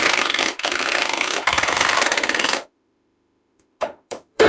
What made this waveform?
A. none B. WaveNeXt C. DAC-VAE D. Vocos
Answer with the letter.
C